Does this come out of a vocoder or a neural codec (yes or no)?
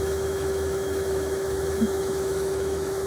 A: yes